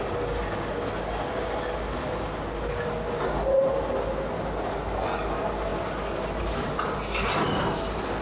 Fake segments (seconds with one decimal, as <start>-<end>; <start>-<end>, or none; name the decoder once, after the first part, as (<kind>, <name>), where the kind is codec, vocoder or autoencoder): none

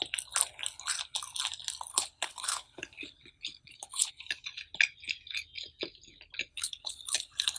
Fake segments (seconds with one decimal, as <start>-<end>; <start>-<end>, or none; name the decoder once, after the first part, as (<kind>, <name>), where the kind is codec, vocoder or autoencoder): 1.9-4.1 (codec, HILCodec); 6.5-7.6

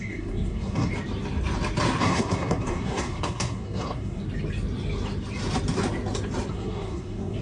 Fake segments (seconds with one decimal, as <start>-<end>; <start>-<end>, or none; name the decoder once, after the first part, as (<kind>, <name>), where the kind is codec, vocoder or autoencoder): 0.0-0.9 (codec, SNAC); 2.0-4.2; 6.5-7.4

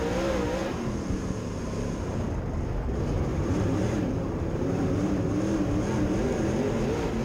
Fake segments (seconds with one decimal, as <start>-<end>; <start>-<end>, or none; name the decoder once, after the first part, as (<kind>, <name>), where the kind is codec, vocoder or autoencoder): 0.6-1.6 (vocoder, BigVGAN v2); 3.3-5.1

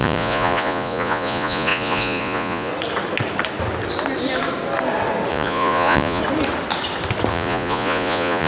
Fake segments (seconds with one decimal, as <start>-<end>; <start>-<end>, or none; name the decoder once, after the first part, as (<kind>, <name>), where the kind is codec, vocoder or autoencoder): 0.0-2.7 (vocoder, Vocos); 5.3-6.2; 7.3-8.5

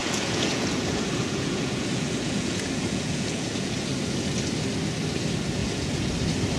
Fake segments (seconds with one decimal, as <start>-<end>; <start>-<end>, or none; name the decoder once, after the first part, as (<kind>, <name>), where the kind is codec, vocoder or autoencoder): 0.0-3.9 (vocoder, Vocos); 5.6-6.1

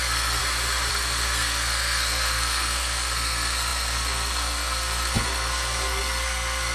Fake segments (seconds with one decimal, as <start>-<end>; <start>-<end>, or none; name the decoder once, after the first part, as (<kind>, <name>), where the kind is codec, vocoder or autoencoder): 0.0-0.4 (codec, SNAC); 0.9-6.7